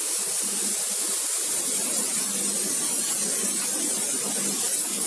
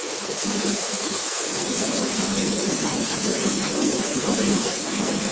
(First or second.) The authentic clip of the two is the first